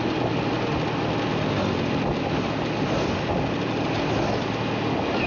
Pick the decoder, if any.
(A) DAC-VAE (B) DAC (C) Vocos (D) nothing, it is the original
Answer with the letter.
D